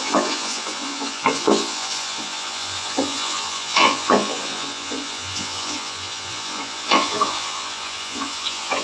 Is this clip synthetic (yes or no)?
yes